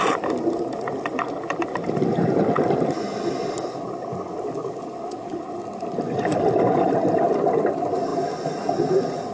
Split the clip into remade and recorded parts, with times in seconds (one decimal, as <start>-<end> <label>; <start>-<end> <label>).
0.0-9.3 recorded